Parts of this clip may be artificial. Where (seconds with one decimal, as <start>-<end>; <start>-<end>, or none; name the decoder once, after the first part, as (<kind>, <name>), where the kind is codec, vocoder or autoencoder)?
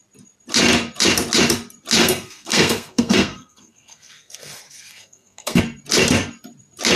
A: 2.0-5.6 (codec, SNAC)